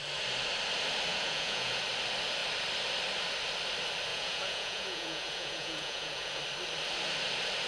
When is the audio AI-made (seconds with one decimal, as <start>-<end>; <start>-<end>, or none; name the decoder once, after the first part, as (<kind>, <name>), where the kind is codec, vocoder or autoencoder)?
1.1-1.8 (vocoder, Vocos); 4.1-6.4